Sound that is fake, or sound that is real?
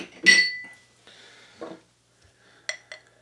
real